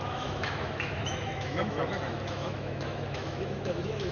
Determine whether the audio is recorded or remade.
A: remade